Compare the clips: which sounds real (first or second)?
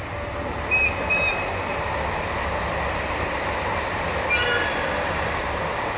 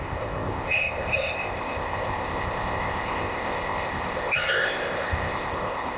first